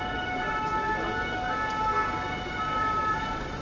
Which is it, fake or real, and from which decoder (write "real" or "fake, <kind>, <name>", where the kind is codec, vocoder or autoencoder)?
real